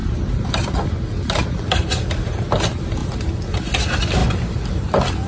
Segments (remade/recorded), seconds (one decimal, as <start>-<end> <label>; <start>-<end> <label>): 0.0-1.8 remade; 1.8-4.2 recorded; 4.2-5.3 remade